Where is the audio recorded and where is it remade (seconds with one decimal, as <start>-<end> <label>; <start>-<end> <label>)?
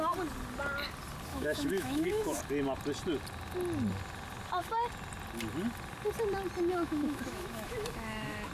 0.0-1.3 recorded; 1.3-2.4 remade; 2.4-6.7 recorded; 6.7-8.5 remade